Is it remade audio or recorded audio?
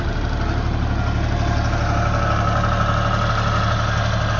recorded